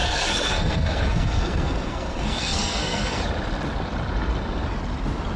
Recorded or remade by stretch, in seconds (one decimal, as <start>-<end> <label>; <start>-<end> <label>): 0.0-3.2 remade; 3.2-5.4 recorded